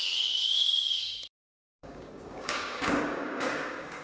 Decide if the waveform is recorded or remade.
remade